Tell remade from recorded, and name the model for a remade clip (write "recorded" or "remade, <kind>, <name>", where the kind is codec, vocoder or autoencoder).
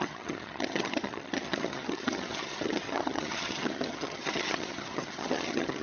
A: remade, vocoder, HiFi-GAN